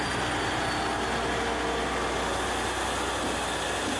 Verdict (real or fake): real